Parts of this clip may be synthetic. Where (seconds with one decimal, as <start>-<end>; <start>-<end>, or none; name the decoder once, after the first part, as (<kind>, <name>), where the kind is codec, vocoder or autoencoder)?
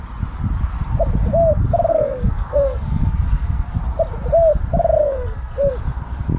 1.9-3.8 (codec, SNAC); 5.0-5.7